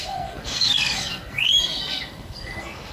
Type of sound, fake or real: fake